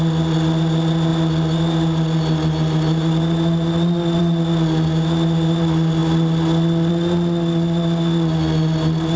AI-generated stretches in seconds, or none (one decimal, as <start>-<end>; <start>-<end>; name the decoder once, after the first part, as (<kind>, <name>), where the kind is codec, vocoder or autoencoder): none